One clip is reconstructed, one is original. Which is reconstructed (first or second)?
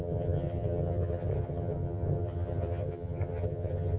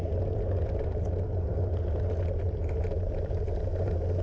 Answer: first